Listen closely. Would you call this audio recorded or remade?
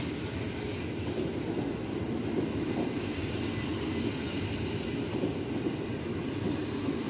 recorded